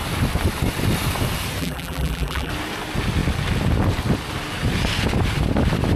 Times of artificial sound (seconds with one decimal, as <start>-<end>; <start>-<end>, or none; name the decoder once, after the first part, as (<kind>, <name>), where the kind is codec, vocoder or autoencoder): 1.6-2.5 (vocoder, BigVGAN v2)

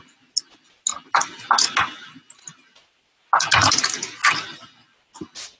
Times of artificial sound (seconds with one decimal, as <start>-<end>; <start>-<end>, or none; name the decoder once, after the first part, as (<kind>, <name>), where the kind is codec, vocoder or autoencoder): none

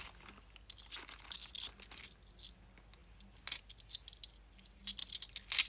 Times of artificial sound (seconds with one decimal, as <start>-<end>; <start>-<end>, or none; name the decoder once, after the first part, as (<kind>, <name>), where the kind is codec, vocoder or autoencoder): none

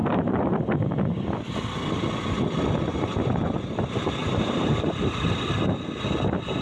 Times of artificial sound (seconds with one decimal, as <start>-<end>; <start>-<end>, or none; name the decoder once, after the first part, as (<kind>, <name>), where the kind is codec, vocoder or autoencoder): 0.0-0.6 (vocoder, BigVGAN v2); 4.2-5.3

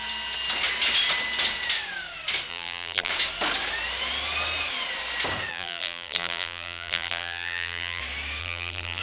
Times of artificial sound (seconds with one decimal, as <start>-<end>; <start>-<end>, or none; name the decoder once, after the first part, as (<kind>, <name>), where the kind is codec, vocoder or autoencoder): 2.5-3.1 (vocoder, BigVGAN v2); 5.5-8.0; 8.4-9.0

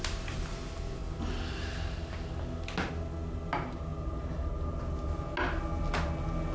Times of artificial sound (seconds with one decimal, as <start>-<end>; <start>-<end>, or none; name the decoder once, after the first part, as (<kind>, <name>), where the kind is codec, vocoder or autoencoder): none